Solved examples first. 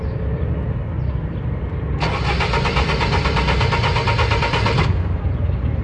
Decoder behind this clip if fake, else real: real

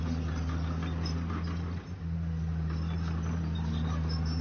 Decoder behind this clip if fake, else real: real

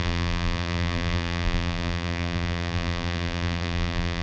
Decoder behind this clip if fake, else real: fake, vocoder, BigVGAN v2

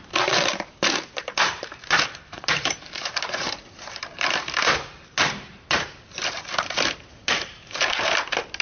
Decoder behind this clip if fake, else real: fake, vocoder, BigVGAN v2